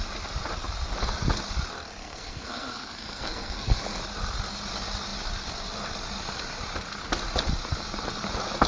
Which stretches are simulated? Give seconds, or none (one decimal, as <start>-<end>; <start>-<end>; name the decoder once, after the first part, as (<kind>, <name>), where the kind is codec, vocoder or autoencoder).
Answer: 2.0-4.0 (codec, SNAC)